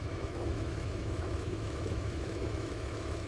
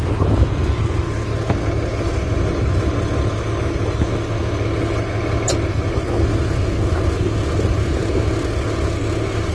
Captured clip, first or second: second